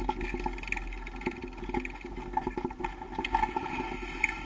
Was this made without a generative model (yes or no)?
yes